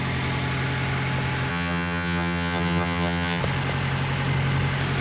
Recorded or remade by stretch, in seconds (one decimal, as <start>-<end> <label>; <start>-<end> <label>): 0.0-1.5 recorded; 1.5-3.4 remade; 3.4-5.0 recorded